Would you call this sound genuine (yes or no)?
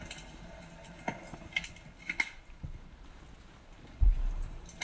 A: yes